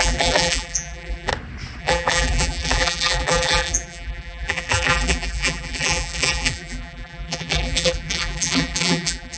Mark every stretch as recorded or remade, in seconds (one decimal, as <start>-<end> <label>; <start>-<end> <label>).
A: 0.0-1.3 remade; 1.3-1.8 recorded; 1.8-9.4 remade